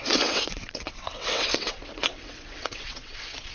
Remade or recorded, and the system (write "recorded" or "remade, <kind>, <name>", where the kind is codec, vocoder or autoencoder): remade, vocoder, WaveNeXt